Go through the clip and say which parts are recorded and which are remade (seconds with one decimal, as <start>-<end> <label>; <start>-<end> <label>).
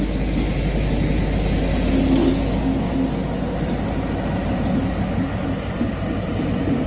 0.0-2.3 recorded; 2.3-2.9 remade; 2.9-6.9 recorded